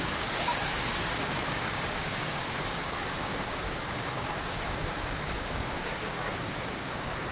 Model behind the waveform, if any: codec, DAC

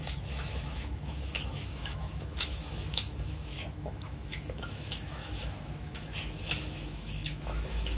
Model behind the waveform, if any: autoencoder, DAC-VAE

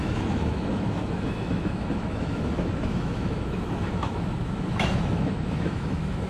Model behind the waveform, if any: autoencoder, DAC-VAE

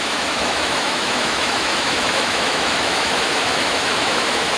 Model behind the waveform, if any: autoencoder, DAC-VAE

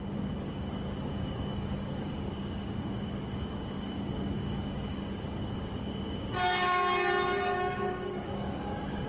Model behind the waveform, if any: codec, DAC